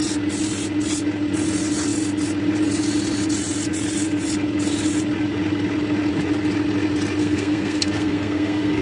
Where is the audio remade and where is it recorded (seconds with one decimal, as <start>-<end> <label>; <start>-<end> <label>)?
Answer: 0.0-7.2 recorded; 7.2-8.8 remade